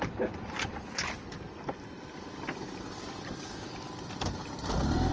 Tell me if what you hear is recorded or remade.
recorded